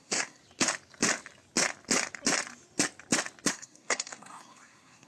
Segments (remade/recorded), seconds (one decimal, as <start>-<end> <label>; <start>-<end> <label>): 0.0-0.4 remade; 0.4-3.5 recorded; 3.5-5.1 remade